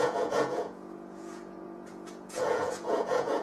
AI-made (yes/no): yes